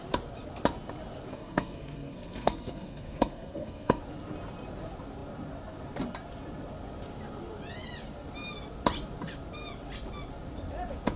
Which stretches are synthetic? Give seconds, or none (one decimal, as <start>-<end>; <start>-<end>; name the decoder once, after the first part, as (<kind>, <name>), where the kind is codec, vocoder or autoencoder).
1.3-4.0 (codec, SNAC)